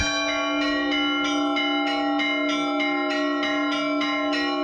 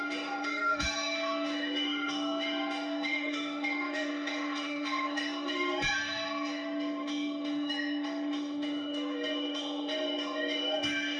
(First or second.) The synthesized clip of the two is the second